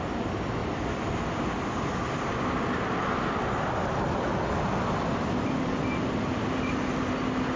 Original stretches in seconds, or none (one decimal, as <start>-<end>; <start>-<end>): 0.0-7.6